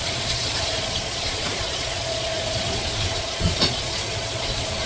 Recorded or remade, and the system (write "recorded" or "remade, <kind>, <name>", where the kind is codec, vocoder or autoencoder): remade, vocoder, Vocos